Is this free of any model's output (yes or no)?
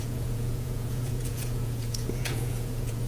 no